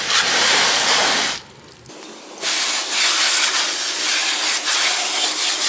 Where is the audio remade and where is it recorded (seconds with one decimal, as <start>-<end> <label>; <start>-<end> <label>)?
0.0-5.7 recorded